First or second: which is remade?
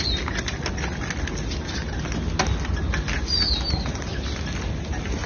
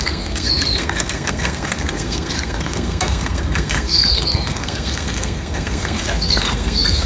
second